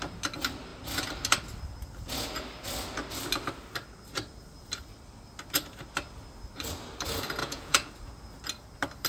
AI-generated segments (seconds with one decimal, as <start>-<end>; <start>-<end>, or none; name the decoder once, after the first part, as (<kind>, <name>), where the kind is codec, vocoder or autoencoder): 7.4-7.9 (vocoder, Vocos)